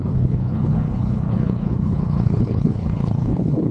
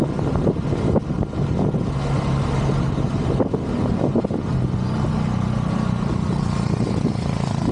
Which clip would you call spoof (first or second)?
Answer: first